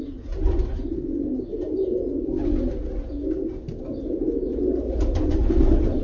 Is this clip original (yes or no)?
yes